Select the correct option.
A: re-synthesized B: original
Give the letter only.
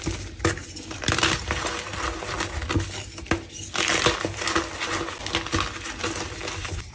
B